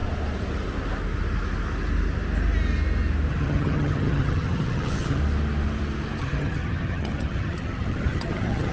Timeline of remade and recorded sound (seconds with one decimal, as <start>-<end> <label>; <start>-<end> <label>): 0.0-3.3 recorded; 3.3-5.2 remade; 5.2-6.2 recorded; 6.2-8.7 remade